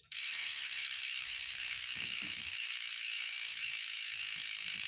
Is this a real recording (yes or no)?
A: no